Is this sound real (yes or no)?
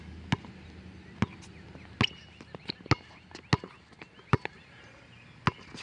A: yes